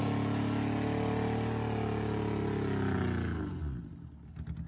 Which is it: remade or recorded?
recorded